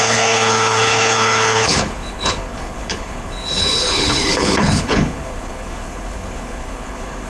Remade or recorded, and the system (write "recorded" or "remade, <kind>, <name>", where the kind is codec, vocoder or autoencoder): remade, codec, HILCodec